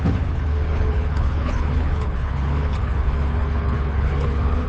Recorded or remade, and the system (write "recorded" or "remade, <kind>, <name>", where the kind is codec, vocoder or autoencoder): remade, codec, HILCodec